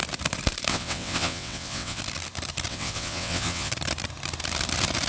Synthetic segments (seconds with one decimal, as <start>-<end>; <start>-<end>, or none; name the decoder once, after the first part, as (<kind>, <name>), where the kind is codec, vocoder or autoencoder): 0.7-2.0 (vocoder, WaveNeXt); 2.7-3.7